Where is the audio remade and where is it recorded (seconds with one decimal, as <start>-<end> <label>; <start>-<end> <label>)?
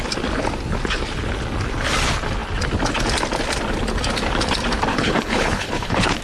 0.0-4.9 recorded; 4.9-6.2 remade